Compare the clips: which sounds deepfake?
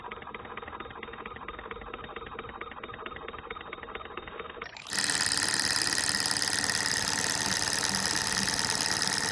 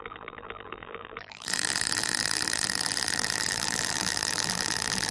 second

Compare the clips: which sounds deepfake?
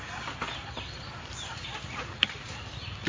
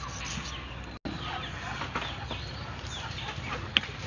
first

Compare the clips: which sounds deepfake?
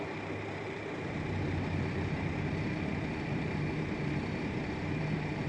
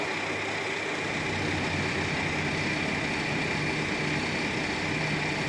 first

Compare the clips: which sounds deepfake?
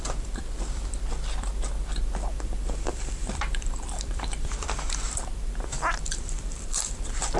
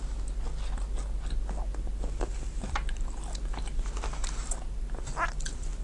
first